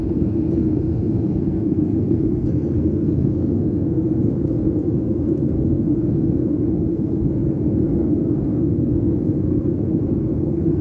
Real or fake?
fake